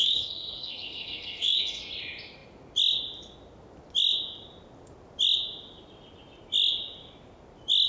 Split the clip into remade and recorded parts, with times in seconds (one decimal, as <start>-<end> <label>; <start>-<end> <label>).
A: 0.0-1.8 remade; 1.8-7.9 recorded